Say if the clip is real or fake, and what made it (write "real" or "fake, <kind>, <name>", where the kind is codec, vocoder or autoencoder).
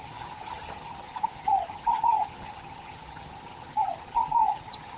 fake, vocoder, HiFi-GAN